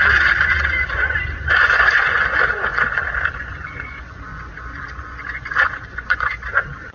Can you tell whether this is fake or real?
fake